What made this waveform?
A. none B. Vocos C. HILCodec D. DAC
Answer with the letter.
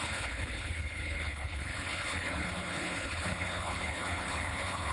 C